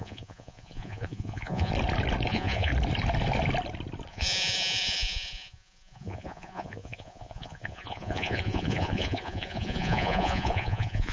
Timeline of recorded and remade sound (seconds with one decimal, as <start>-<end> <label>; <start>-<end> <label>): 0.0-1.7 remade; 1.7-2.3 recorded; 2.3-2.7 remade; 2.7-4.1 recorded; 4.1-11.1 remade